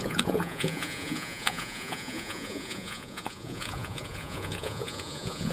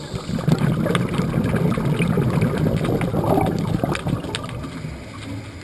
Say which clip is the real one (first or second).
second